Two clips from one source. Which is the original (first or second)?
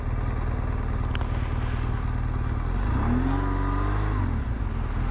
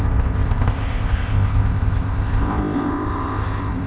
first